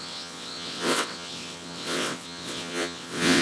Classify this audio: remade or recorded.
remade